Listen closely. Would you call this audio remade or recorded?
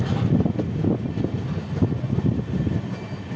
recorded